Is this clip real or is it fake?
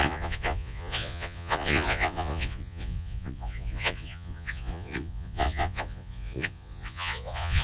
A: fake